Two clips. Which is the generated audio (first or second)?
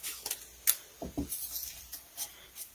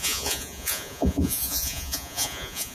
second